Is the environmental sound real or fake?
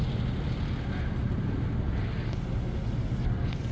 real